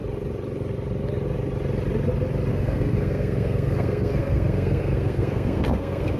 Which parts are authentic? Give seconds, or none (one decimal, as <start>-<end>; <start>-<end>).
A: 0.0-2.5